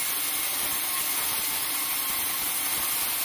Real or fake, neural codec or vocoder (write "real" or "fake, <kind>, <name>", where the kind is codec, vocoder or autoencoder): real